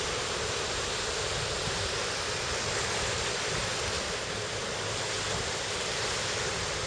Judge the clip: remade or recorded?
recorded